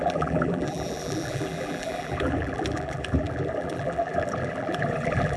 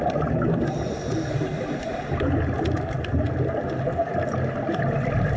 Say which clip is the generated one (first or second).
first